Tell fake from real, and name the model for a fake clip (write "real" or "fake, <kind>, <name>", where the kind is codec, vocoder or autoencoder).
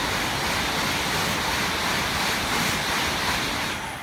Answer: real